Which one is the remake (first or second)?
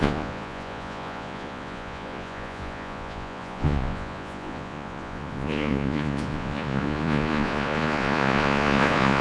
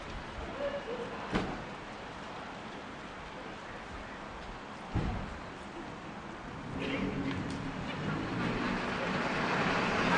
first